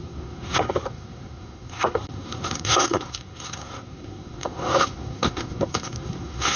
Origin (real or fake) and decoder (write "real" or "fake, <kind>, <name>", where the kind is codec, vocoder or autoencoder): fake, codec, SNAC